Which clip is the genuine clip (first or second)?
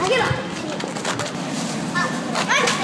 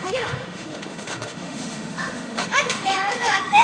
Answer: first